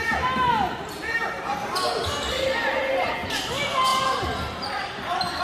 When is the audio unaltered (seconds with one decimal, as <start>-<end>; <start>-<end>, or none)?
0.0-3.9